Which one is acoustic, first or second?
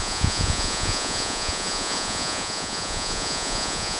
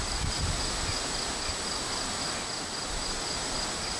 second